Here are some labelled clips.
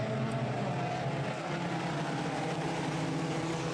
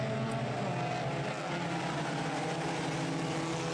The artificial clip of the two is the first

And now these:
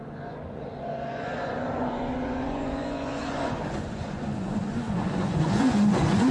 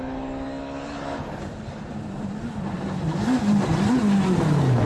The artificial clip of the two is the first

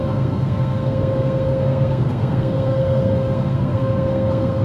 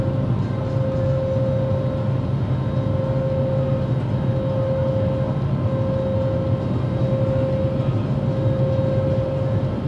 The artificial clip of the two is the first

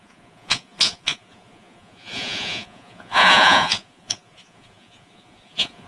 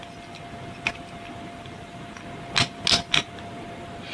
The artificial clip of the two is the first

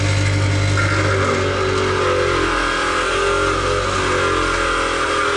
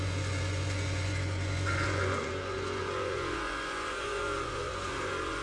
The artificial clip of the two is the second